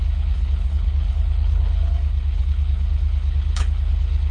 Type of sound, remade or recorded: remade